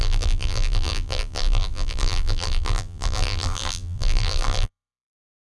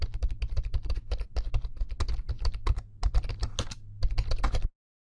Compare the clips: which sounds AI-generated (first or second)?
first